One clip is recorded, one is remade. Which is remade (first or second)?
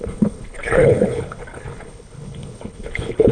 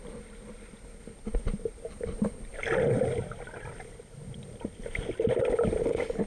first